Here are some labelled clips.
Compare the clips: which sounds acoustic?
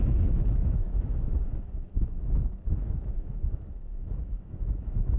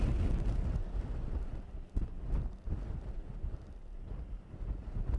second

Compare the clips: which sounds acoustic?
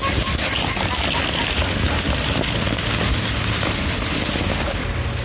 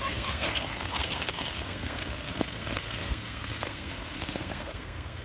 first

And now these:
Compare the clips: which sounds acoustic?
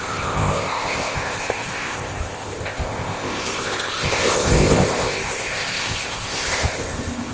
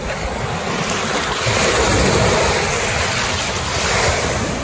second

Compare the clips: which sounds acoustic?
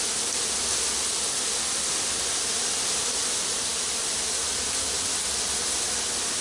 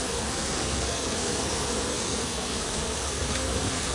first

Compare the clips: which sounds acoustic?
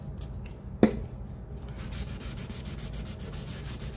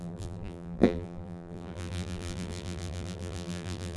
first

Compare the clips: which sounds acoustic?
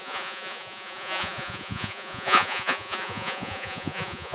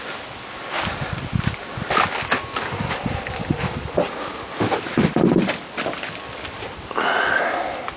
second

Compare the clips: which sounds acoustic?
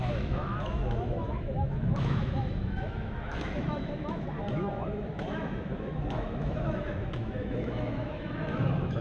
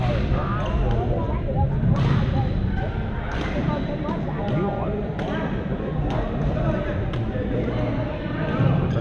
second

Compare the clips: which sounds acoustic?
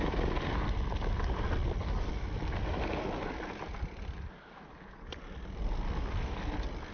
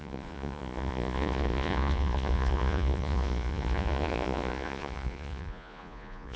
first